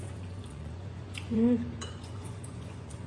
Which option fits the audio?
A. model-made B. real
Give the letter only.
A